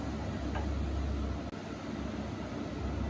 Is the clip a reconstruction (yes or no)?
no